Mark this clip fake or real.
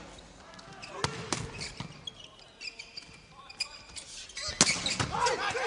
real